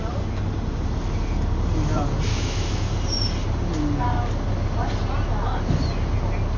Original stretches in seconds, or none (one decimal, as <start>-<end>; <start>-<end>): 0.0-2.3; 2.9-6.6